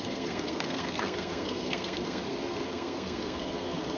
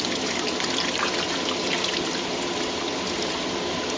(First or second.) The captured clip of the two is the second